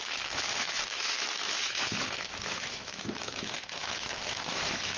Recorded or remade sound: remade